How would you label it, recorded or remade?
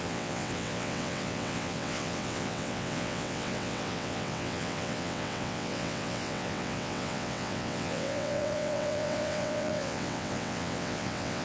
remade